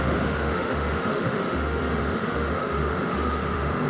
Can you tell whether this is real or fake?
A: fake